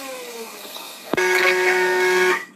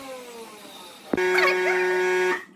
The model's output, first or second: first